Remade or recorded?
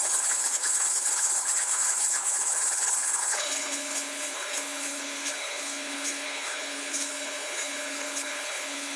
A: remade